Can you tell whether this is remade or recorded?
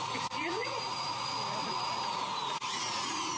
remade